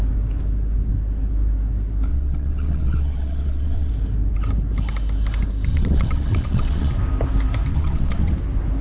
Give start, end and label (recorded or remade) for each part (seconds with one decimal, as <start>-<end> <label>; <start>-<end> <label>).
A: 0.0-2.1 recorded; 2.1-3.9 remade; 3.9-5.7 recorded; 5.7-6.9 remade; 6.9-7.7 recorded; 7.7-8.3 remade; 8.3-8.8 recorded